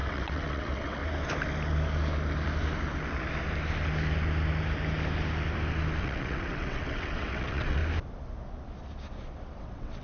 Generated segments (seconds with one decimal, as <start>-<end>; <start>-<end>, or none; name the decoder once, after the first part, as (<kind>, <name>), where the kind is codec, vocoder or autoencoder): 0.0-1.0 (vocoder, WaveNeXt); 6.0-7.8; 9.6-10.0

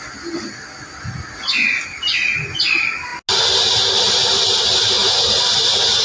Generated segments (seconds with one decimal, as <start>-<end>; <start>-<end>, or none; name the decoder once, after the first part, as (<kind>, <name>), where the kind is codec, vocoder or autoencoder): none

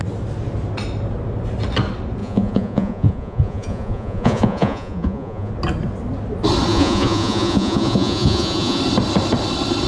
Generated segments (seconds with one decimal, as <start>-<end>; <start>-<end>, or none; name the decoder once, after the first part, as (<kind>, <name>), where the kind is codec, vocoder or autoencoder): 2.2-5.5 (vocoder, Vocos); 6.7-8.8

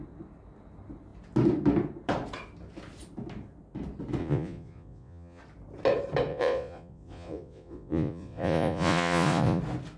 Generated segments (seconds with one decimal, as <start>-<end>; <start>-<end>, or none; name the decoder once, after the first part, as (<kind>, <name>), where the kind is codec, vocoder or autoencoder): 4.2-5.4 (vocoder, Vocos); 6.3-9.6

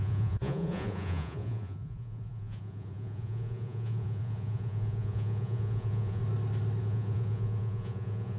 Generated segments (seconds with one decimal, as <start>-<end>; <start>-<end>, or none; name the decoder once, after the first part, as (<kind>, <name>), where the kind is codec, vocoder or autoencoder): 0.0-6.2 (vocoder, Vocos); 6.8-8.4

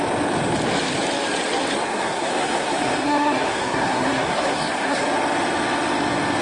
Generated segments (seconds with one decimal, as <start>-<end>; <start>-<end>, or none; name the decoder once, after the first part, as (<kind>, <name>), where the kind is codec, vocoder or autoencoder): 1.9-5.0 (codec, SNAC)